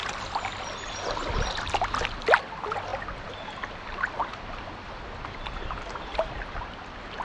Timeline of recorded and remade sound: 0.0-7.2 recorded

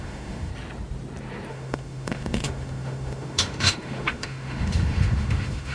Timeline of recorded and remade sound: 0.0-0.5 remade; 0.5-1.5 recorded; 1.5-5.7 remade